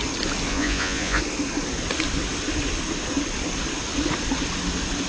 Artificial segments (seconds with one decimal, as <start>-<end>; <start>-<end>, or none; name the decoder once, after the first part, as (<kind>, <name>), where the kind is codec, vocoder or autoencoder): 0.5-1.2 (vocoder, Vocos)